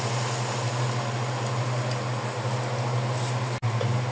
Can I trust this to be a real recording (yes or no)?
yes